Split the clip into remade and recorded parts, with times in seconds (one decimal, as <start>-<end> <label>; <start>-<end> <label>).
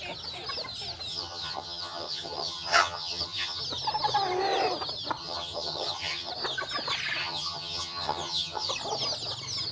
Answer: 0.0-1.1 recorded; 1.1-3.6 remade; 3.6-5.2 recorded; 5.2-6.3 remade; 6.3-7.2 recorded; 7.2-8.7 remade; 8.7-9.7 recorded